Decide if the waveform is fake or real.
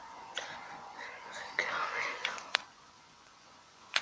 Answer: fake